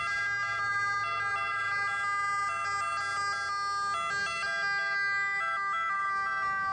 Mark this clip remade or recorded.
recorded